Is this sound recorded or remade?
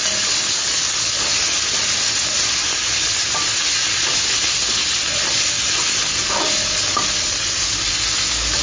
recorded